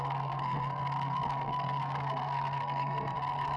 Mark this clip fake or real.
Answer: fake